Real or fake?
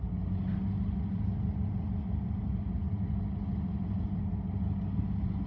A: real